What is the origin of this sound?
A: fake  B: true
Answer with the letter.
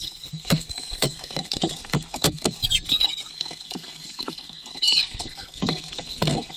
A